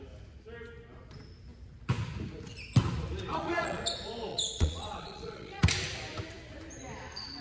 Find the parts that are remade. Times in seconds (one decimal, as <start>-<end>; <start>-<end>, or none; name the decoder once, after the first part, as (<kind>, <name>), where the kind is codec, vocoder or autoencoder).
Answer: 3.3-3.8 (vocoder, Vocos); 4.3-5.6